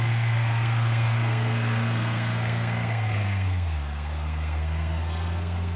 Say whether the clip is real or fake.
fake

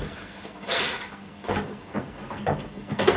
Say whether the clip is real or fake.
fake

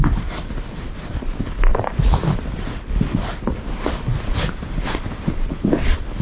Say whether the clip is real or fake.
real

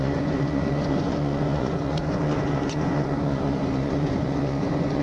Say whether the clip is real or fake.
fake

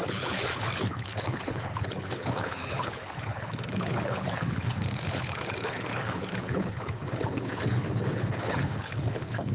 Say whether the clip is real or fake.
fake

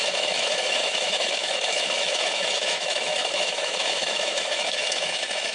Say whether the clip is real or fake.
fake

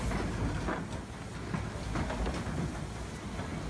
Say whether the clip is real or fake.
real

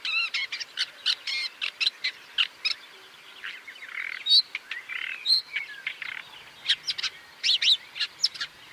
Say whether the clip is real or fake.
real